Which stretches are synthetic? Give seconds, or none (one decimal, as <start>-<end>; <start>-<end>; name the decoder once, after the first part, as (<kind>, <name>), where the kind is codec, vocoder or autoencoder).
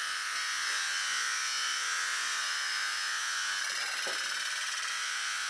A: 0.0-3.6 (vocoder, Vocos); 4.9-5.5